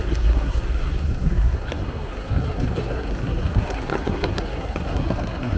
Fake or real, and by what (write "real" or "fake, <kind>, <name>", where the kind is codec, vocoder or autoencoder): fake, codec, SNAC